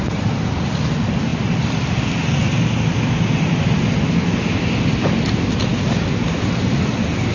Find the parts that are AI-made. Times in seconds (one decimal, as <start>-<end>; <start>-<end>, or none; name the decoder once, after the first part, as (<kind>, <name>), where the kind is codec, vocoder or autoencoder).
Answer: none